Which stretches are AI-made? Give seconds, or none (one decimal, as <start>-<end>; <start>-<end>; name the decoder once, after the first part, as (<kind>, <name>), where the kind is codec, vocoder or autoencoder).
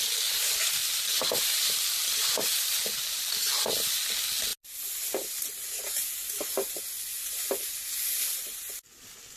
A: none